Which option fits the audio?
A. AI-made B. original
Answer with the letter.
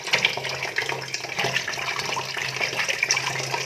B